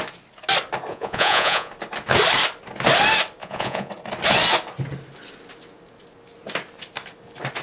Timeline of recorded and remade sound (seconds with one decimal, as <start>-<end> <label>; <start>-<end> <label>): 0.0-0.9 recorded; 0.9-1.7 remade; 1.7-3.4 recorded; 3.4-3.9 remade; 3.9-7.6 recorded